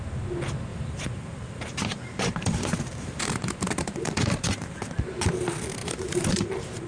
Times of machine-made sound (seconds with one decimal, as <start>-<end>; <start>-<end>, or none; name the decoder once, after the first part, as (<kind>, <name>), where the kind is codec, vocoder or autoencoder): 0.7-4.8 (vocoder, BigVGAN v2); 5.8-6.9